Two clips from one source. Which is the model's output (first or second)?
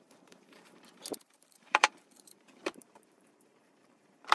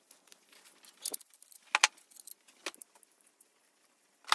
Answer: first